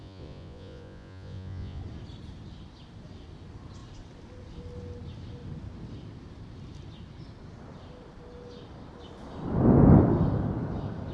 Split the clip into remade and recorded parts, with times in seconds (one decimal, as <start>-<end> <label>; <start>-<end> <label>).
0.0-1.8 remade; 1.8-11.1 recorded

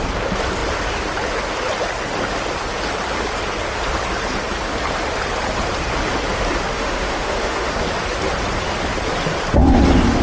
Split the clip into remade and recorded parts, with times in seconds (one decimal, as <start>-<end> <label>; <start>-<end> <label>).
0.0-6.7 recorded; 6.7-7.7 remade; 7.7-10.2 recorded